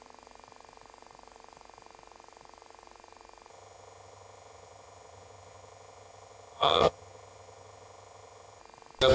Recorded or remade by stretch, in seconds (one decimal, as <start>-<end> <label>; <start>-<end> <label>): 0.0-3.5 recorded; 3.5-8.6 remade; 8.6-9.1 recorded